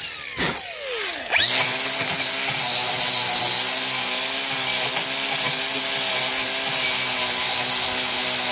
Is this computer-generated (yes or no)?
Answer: no